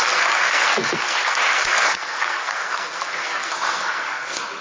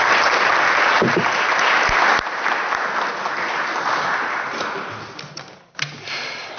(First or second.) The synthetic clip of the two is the first